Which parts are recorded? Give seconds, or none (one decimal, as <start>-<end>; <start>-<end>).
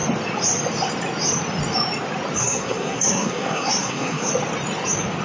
0.0-2.4; 4.3-5.2